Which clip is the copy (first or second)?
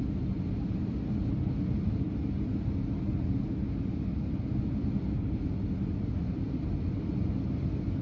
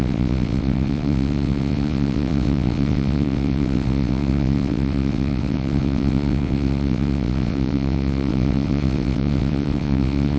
second